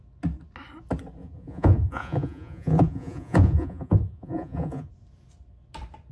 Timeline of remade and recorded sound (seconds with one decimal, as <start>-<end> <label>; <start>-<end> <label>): 0.0-1.2 recorded; 1.2-4.9 remade; 4.9-6.1 recorded